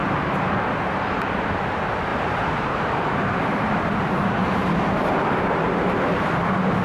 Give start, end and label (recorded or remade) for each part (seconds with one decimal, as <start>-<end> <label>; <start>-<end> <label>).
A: 0.0-0.7 remade; 0.7-2.1 recorded; 2.1-6.2 remade; 6.2-6.8 recorded